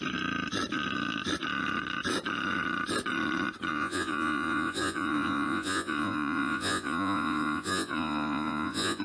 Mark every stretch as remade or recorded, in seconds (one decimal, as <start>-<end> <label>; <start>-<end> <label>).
0.0-3.7 recorded; 3.7-9.0 remade

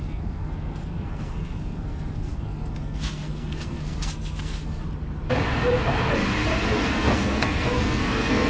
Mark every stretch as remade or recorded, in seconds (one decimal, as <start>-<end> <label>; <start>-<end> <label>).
0.0-4.8 remade; 4.8-6.6 recorded; 6.6-8.5 remade

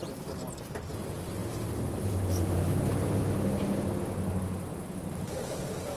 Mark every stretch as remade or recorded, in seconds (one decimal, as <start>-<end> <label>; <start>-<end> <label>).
0.0-1.4 recorded; 1.4-3.2 remade; 3.2-4.7 recorded; 4.7-6.0 remade

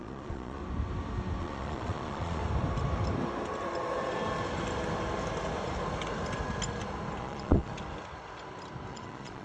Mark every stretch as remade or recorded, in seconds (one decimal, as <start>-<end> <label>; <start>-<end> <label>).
0.0-0.6 remade; 0.6-1.4 recorded; 1.4-2.4 remade; 2.4-7.2 recorded; 7.2-7.7 remade; 7.7-8.9 recorded; 8.9-9.4 remade